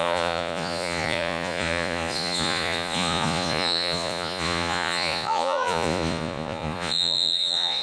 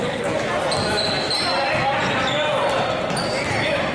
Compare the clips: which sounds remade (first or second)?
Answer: first